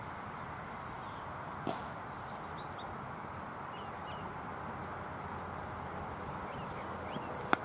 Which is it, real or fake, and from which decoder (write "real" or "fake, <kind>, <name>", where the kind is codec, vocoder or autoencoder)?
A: real